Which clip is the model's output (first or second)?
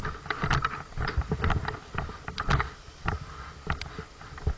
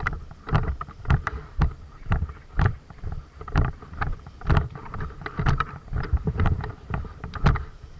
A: second